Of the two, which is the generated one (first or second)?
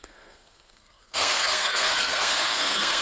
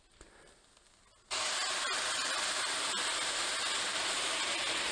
first